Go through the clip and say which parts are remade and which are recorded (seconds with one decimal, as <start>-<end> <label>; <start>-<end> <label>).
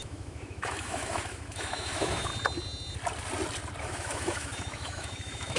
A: 0.0-2.3 remade; 2.3-3.8 recorded; 3.8-5.6 remade